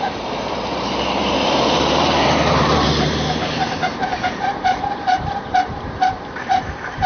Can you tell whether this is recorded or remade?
remade